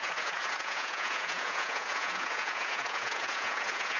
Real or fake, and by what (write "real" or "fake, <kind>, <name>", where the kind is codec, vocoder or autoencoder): fake, vocoder, Vocos